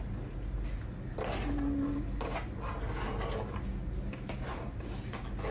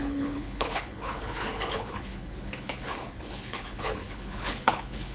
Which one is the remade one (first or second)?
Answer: second